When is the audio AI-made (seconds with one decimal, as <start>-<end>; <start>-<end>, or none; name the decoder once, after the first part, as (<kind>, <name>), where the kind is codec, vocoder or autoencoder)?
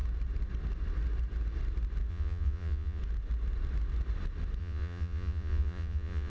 2.1-3.0 (vocoder, Vocos); 4.6-6.3